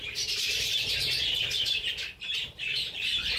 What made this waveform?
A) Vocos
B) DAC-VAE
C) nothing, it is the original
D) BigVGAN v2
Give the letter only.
D